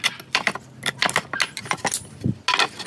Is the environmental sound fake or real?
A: real